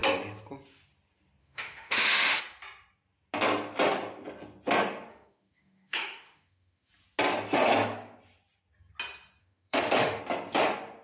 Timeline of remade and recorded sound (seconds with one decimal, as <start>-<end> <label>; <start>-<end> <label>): 0.0-1.4 recorded; 1.4-2.4 remade; 2.4-5.1 recorded; 5.1-6.9 remade; 6.9-9.4 recorded; 9.4-10.2 remade; 10.2-11.0 recorded